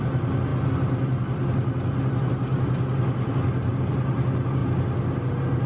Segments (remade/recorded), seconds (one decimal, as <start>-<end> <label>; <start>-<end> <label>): 0.0-5.7 recorded